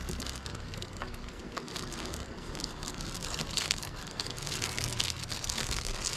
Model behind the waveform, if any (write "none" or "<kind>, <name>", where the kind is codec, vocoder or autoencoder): codec, SNAC